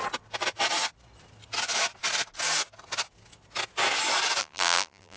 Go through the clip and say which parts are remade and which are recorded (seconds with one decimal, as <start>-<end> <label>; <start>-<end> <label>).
0.0-4.4 recorded; 4.4-5.2 remade